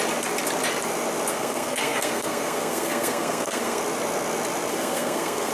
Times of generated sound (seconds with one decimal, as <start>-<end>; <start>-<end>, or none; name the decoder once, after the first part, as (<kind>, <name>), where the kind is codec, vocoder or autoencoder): 1.3-3.8 (codec, SNAC); 4.7-5.5